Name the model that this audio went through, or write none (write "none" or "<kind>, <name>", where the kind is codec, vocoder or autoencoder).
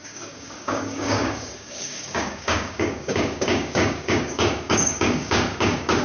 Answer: codec, DAC